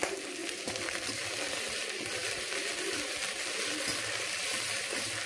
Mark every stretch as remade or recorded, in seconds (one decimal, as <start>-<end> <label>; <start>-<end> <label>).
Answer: 0.0-5.3 recorded